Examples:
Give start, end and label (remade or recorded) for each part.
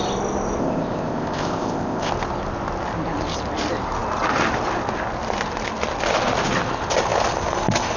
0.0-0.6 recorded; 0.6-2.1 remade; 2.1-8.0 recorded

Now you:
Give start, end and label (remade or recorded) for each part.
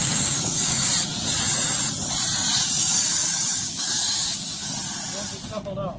0.0-0.9 remade; 0.9-2.8 recorded; 2.8-4.7 remade; 4.7-6.0 recorded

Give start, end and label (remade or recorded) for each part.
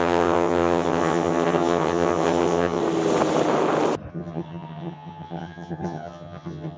0.0-2.8 remade; 2.8-4.1 recorded; 4.1-6.8 remade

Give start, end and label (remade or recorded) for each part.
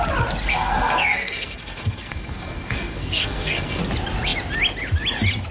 0.0-0.5 recorded; 0.5-3.8 remade; 3.8-5.5 recorded